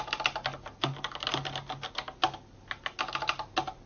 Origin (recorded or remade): recorded